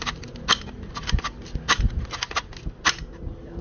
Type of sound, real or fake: real